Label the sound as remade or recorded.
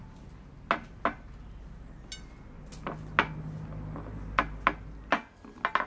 recorded